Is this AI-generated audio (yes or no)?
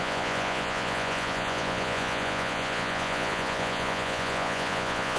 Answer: yes